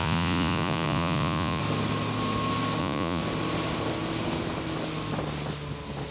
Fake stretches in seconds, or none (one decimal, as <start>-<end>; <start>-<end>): 0.0-1.6; 2.8-3.2